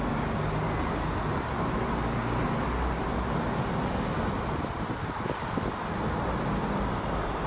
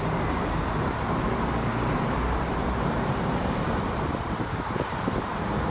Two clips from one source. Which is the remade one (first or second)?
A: second